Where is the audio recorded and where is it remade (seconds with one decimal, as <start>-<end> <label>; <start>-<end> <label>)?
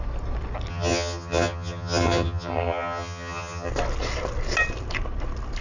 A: 0.0-0.7 recorded; 0.7-3.7 remade; 3.7-5.6 recorded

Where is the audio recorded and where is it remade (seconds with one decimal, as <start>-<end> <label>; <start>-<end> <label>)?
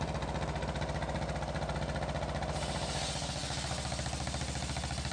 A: 0.0-5.1 recorded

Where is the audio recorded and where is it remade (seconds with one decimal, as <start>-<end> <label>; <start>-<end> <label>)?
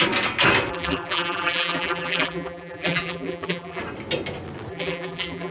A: 0.0-0.7 recorded; 0.7-3.8 remade; 3.8-4.7 recorded; 4.7-5.5 remade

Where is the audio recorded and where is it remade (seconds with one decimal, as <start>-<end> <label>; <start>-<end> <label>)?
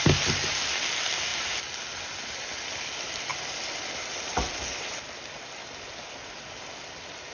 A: 0.0-7.3 recorded